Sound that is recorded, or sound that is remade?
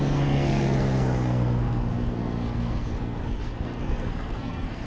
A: remade